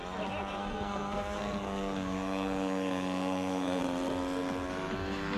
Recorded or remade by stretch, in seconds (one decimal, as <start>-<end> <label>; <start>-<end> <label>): 0.0-0.6 recorded; 0.6-3.8 remade; 3.8-5.4 recorded